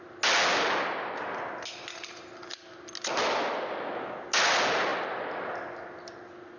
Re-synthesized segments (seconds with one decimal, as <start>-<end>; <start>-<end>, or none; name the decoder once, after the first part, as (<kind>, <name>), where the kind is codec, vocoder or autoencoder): none